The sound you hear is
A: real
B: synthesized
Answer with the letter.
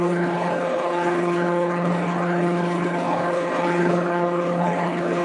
B